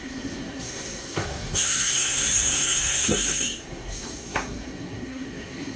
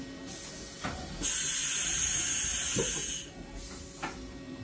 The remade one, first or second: first